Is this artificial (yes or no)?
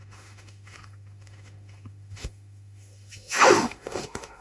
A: yes